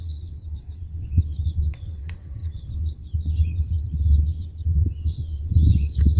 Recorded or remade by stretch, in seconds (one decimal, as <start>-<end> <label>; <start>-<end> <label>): 0.0-6.2 remade